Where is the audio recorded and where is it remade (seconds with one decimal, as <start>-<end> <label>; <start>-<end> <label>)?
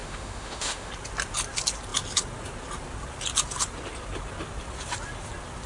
0.0-0.9 remade; 0.9-5.7 recorded